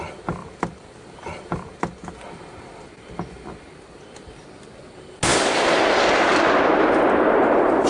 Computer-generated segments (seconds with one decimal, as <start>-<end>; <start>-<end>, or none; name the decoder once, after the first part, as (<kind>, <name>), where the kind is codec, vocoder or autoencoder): 0.4-1.5 (vocoder, BigVGAN v2)

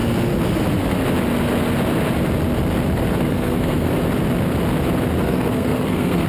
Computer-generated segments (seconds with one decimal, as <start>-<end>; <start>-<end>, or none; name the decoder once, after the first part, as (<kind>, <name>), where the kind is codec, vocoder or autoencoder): 3.3-3.9 (codec, SNAC); 5.2-6.3

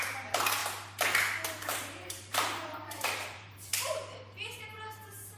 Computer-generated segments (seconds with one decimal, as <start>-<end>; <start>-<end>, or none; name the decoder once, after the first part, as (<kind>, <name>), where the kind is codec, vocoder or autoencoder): 0.0-0.6 (vocoder, BigVGAN v2); 1.5-3.7; 4.6-5.4

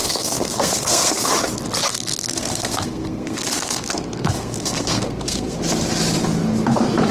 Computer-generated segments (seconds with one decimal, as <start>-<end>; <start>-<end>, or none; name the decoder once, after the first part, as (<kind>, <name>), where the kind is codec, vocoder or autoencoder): 0.0-1.3 (codec, SNAC); 1.9-5.6

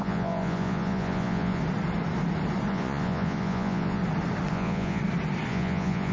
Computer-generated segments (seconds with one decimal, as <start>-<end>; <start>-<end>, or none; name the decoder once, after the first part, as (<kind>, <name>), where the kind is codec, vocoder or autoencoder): 0.0-1.6 (vocoder, Vocos); 2.7-4.0; 4.5-5.0; 5.5-6.1

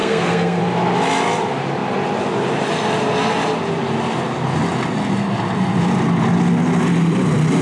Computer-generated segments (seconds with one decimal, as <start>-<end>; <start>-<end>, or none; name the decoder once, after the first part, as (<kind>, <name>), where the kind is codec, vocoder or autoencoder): 0.0-0.6 (codec, SNAC)

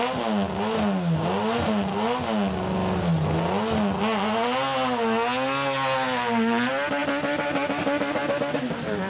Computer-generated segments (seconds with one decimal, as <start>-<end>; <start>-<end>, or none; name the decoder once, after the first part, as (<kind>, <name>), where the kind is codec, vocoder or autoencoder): none

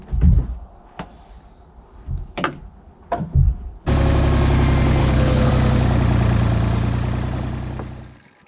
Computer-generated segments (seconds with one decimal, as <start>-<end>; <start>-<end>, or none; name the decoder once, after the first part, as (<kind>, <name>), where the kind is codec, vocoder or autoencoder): 5.0-5.5 (codec, HILCodec)